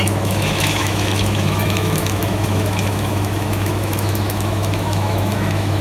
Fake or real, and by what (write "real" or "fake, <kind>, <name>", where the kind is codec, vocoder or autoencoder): fake, autoencoder, DAC-VAE